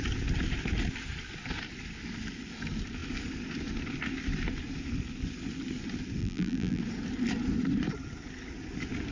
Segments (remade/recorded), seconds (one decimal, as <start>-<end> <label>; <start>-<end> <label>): 0.0-6.2 recorded; 6.2-6.8 remade; 6.8-9.1 recorded

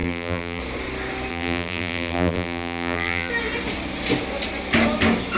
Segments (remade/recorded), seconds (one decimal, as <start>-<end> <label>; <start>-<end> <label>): 0.0-0.6 remade; 0.6-1.3 recorded; 1.3-3.3 remade; 3.3-5.4 recorded

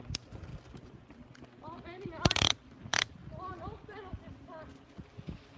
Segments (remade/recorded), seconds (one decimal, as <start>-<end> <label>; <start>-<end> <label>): 0.0-0.5 recorded; 0.5-1.4 remade; 1.4-3.2 recorded; 3.2-4.1 remade; 4.1-5.6 recorded

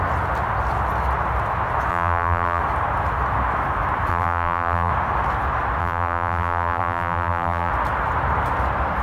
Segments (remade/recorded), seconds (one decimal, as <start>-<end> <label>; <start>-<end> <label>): 0.0-1.9 recorded; 1.9-2.6 remade; 2.6-4.1 recorded; 4.1-4.9 remade; 4.9-5.8 recorded; 5.8-7.7 remade; 7.7-9.0 recorded

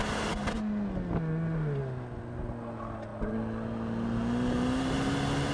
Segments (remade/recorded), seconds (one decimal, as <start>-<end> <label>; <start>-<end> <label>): 0.0-5.5 recorded

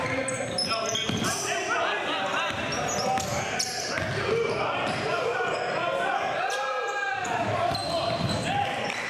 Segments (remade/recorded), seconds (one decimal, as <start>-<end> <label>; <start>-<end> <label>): 0.0-7.8 recorded; 7.8-9.1 remade

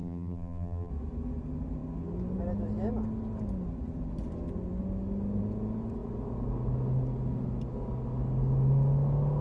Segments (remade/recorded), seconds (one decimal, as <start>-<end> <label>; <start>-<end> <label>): 0.0-0.9 remade; 0.9-9.4 recorded